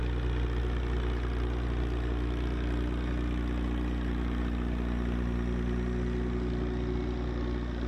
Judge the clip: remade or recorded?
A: recorded